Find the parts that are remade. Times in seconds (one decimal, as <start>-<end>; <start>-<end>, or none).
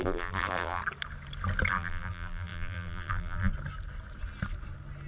0.0-0.8; 1.7-3.5